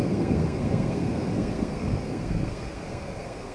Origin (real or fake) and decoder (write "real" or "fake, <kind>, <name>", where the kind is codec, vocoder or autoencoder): fake, codec, SNAC